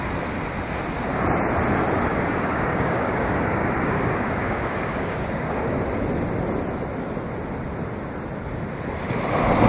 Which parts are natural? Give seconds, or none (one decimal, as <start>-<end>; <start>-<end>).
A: 0.0-2.1; 5.8-9.7